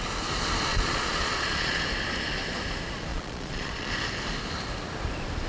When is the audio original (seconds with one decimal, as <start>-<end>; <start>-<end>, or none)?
0.0-0.7; 1.8-3.1; 3.9-5.5